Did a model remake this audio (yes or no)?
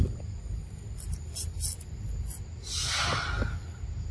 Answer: no